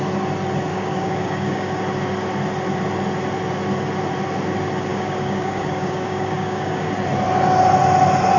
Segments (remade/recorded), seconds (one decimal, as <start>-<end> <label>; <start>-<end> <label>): 0.0-0.7 recorded; 0.7-1.8 remade; 1.8-4.9 recorded; 4.9-6.9 remade; 6.9-8.4 recorded